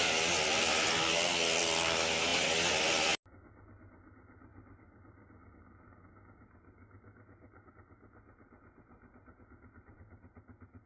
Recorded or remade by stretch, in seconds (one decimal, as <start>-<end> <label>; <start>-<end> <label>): 0.0-10.9 recorded